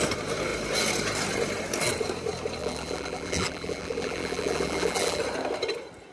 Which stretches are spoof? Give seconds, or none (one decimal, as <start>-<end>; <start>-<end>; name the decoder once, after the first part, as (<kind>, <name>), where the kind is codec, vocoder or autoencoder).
2.6-5.2 (vocoder, BigVGAN v2)